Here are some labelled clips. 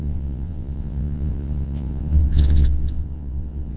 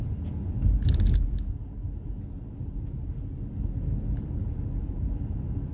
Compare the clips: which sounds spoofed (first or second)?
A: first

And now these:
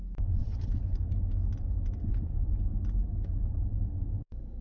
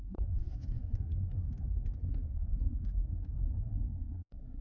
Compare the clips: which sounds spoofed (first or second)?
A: second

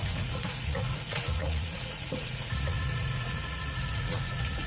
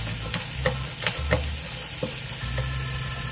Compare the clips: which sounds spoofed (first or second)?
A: first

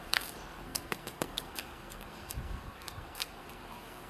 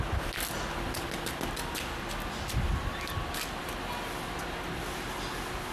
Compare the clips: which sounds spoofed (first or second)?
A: first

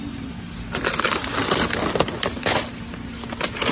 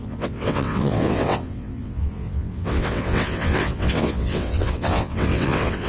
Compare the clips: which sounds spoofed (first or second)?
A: second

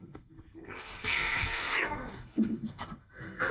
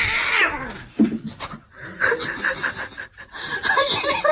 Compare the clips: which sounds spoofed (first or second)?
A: first